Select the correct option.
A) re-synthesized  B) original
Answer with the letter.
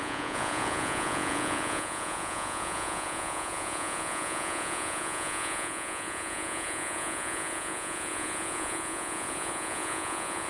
A